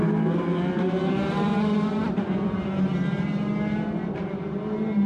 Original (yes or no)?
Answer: yes